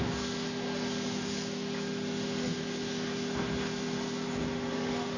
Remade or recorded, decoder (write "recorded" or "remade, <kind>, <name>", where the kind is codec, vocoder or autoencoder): recorded